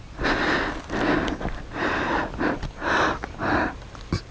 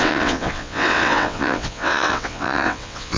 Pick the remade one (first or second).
second